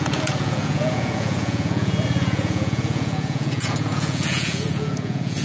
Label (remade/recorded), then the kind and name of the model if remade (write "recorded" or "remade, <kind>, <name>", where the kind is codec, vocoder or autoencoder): remade, vocoder, Vocos